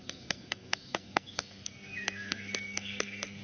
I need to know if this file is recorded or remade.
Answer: remade